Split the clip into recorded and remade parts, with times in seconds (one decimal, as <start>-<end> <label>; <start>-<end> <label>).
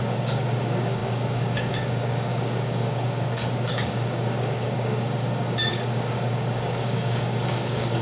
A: 0.0-8.0 remade